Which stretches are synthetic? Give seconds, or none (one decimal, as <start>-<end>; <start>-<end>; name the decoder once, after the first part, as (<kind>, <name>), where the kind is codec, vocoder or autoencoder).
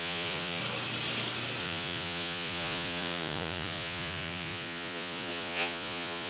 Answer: 0.0-0.6 (vocoder, Vocos); 1.6-6.3